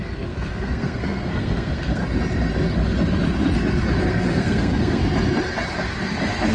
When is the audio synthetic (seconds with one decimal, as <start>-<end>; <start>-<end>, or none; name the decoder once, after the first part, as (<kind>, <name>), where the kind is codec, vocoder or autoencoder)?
0.0-2.0 (codec, SNAC); 4.0-5.0

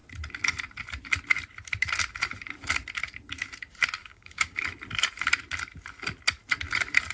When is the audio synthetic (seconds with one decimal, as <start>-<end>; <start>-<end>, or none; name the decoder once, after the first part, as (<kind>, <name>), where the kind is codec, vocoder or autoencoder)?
4.0-4.6 (codec, DAC)